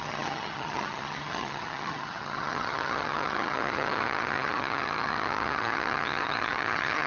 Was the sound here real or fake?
fake